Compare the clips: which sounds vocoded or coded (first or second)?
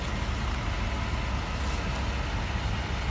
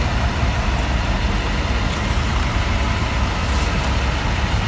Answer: second